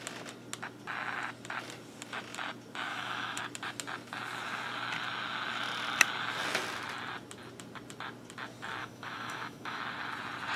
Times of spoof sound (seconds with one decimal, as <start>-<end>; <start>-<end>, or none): 2.9-3.4; 8.8-9.8